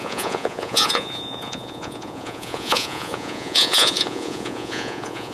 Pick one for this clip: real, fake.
fake